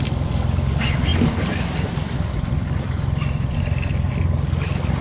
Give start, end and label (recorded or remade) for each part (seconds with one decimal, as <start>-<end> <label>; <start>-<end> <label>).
0.0-1.1 recorded; 1.1-4.1 remade; 4.1-5.0 recorded